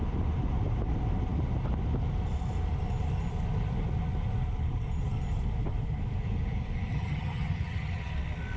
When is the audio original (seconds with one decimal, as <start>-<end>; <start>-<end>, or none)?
0.0-6.9; 8.1-8.6